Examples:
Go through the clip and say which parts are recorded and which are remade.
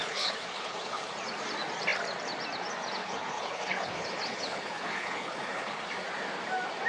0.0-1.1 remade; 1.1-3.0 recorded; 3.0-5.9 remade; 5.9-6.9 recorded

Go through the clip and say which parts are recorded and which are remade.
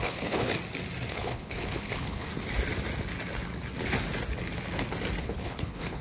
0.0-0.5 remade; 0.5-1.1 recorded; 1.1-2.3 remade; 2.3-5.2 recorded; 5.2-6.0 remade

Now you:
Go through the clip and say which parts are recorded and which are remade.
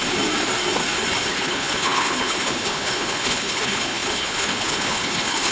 0.0-1.3 recorded; 1.3-5.5 remade